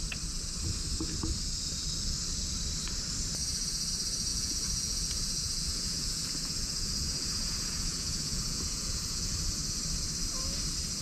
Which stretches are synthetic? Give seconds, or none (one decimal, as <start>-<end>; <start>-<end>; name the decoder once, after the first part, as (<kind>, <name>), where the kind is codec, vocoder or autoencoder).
4.3-9.3 (vocoder, Vocos)